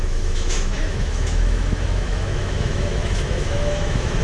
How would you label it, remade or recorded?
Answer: remade